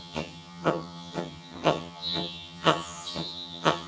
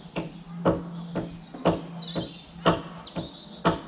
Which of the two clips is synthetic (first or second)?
first